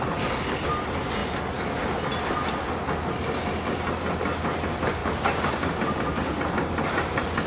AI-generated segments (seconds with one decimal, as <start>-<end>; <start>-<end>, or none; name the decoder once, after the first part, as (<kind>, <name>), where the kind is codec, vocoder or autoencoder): none